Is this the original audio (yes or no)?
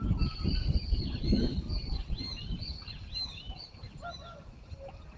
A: yes